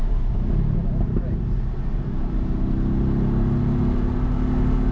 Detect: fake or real real